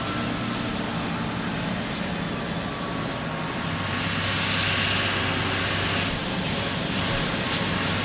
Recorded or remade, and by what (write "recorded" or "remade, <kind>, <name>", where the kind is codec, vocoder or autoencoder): recorded